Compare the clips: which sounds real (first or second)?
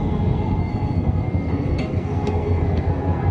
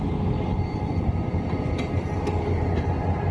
second